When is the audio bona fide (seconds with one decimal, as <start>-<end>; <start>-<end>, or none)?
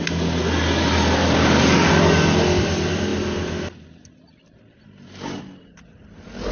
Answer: 0.0-1.2; 1.9-6.5